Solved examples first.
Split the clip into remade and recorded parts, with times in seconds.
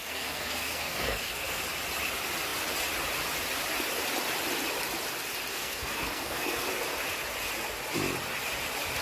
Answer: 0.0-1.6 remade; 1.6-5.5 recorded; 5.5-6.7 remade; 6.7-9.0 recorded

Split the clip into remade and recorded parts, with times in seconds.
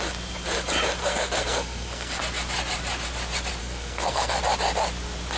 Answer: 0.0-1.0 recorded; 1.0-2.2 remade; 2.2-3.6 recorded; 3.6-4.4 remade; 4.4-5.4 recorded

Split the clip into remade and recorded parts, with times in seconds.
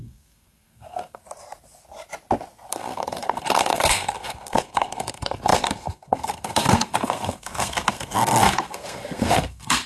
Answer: 0.0-1.2 remade; 1.2-2.7 recorded; 2.7-9.9 remade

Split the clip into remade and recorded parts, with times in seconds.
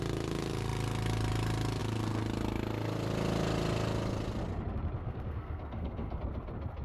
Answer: 0.0-5.0 recorded; 5.0-6.2 remade; 6.2-6.8 recorded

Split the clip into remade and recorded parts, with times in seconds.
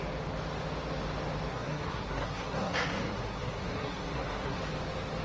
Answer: 0.0-1.5 recorded; 1.5-4.6 remade; 4.6-5.2 recorded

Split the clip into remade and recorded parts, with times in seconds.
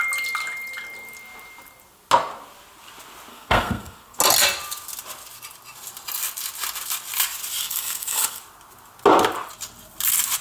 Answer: 0.0-3.3 recorded; 3.3-4.2 remade; 4.2-7.6 recorded; 7.6-8.4 remade; 8.4-10.4 recorded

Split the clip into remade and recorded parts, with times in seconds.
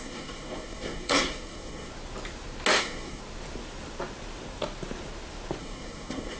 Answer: 0.0-1.9 remade; 1.9-2.8 recorded; 2.8-3.2 remade; 3.2-5.6 recorded; 5.6-6.4 remade